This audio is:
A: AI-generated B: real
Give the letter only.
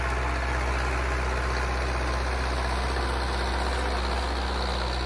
B